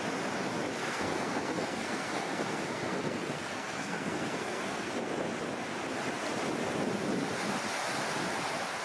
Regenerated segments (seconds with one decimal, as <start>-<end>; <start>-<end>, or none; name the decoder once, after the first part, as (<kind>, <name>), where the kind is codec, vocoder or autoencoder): 0.8-5.1 (codec, SNAC)